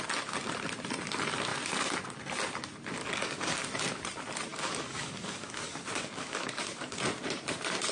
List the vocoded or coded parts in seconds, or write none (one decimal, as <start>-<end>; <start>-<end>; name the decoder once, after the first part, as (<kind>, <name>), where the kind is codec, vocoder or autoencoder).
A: 3.0-3.7 (codec, DAC); 4.5-7.0